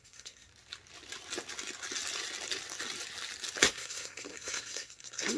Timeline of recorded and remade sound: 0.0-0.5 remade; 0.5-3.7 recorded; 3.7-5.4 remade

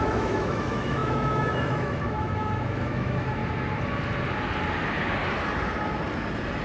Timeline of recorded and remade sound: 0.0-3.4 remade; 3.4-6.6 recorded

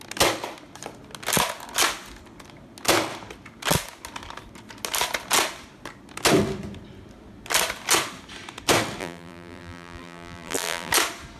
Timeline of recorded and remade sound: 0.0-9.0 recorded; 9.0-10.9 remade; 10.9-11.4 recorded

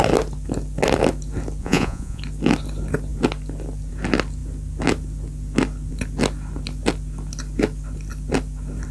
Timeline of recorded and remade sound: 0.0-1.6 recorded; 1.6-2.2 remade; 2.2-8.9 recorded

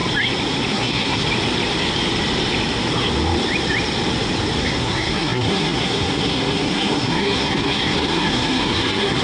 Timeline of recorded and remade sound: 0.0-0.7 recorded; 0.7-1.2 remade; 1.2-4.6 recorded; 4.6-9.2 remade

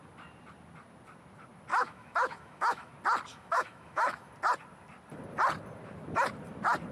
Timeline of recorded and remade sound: 0.0-1.7 recorded; 1.7-2.9 remade; 2.9-3.3 recorded; 3.3-4.3 remade; 4.3-6.9 recorded